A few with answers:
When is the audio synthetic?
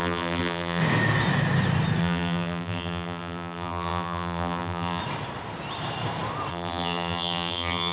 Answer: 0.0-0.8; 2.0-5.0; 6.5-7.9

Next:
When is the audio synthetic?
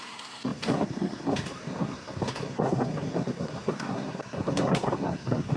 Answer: 0.0-5.6